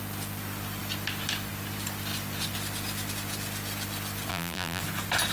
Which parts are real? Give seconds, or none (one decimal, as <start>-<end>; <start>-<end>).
0.0-4.3; 4.8-5.3

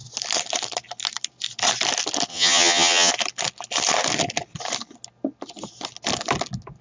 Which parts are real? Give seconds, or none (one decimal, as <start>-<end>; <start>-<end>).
0.0-2.3; 3.1-6.8